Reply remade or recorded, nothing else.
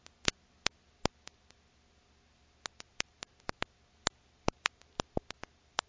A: recorded